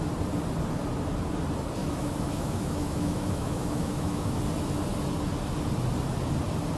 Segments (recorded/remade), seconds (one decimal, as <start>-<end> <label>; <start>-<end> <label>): 0.0-1.8 recorded; 1.8-4.4 remade; 4.4-6.8 recorded